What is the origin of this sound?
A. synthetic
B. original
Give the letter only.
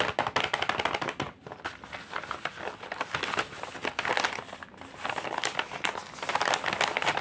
B